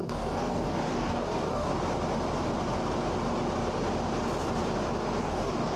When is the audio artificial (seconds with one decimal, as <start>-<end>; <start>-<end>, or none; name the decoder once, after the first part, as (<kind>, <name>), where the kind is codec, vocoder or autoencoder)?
0.0-1.7 (codec, DAC); 5.2-5.8